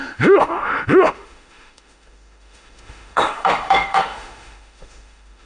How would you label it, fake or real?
fake